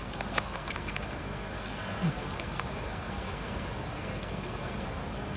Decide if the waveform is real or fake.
fake